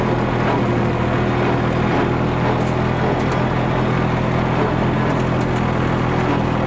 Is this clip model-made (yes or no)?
no